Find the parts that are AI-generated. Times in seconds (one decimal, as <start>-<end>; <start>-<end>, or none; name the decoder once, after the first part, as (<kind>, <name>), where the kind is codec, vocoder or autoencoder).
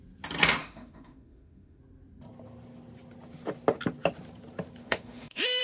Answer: 0.6-1.8 (autoencoder, DAC-VAE); 4.8-5.6